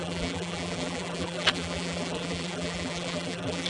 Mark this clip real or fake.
fake